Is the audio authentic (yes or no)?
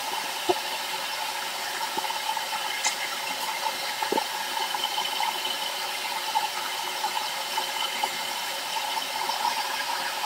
yes